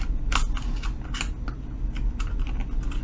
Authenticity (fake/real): real